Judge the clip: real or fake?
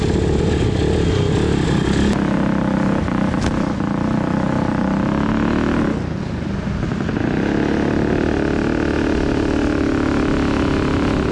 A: real